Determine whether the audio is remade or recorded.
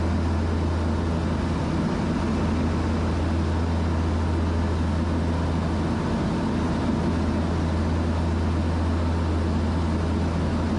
recorded